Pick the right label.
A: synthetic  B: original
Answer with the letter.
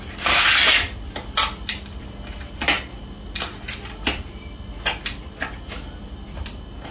B